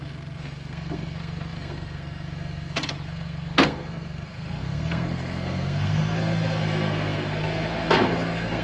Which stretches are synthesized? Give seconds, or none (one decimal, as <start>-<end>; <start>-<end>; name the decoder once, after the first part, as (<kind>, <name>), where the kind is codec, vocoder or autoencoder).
0.0-8.6 (codec, SNAC)